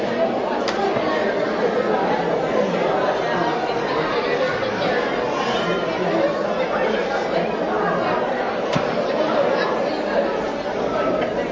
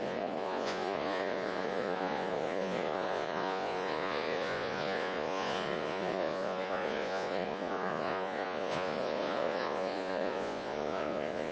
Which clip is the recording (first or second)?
first